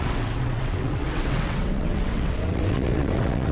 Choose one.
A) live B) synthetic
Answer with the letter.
B